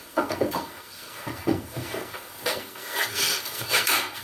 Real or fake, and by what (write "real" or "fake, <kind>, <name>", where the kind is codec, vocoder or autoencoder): fake, codec, SNAC